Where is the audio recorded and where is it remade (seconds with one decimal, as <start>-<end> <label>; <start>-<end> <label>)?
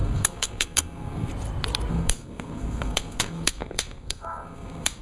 0.0-1.3 remade; 1.3-1.9 recorded; 1.9-5.0 remade